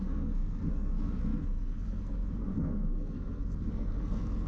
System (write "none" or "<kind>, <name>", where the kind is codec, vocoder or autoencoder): codec, SNAC